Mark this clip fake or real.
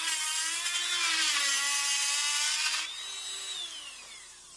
real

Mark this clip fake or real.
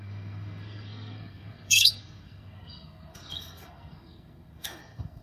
fake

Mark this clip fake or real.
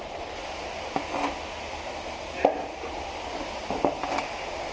real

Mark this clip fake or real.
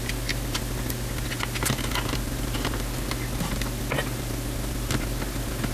real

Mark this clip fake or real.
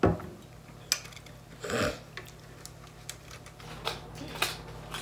real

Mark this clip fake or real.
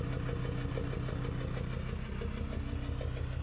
real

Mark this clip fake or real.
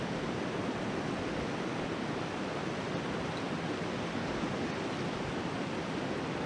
real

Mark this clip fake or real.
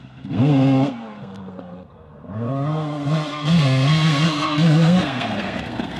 fake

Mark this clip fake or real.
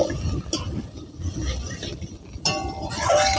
real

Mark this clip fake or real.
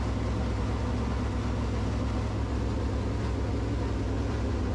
real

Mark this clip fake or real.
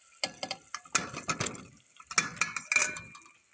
real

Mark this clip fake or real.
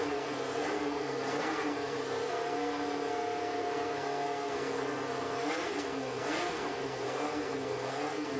fake